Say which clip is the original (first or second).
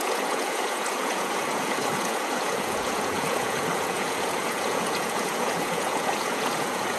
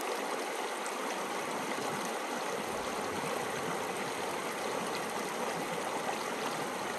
second